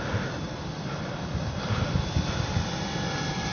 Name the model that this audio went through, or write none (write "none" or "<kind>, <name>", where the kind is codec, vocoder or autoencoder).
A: none